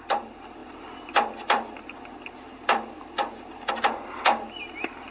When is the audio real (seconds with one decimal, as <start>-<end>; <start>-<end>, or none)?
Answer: 0.0-5.1